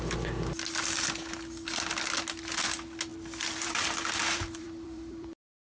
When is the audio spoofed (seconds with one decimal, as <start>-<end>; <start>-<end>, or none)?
3.1-5.7